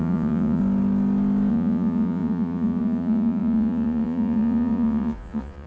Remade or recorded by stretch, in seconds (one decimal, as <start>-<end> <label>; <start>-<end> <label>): 0.0-0.6 remade; 0.6-1.5 recorded; 1.5-5.7 remade